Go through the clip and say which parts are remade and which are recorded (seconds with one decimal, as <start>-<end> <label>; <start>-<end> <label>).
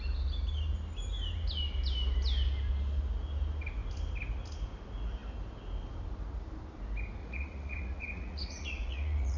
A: 0.0-7.2 recorded; 7.2-9.4 remade